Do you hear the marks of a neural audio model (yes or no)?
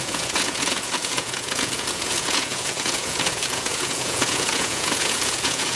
yes